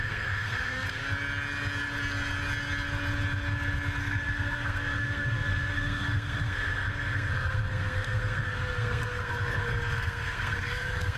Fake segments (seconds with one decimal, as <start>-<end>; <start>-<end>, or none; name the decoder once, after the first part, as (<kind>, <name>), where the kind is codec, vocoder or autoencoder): 0.0-1.0 (codec, SNAC); 4.0-11.2